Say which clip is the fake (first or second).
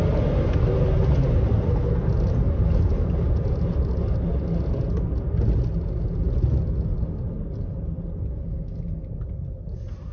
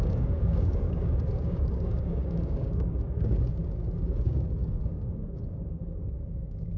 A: second